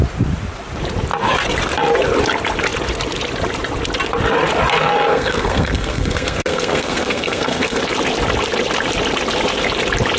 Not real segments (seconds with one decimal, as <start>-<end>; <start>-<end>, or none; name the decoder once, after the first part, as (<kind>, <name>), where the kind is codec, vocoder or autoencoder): 5.1-7.8 (codec, SNAC)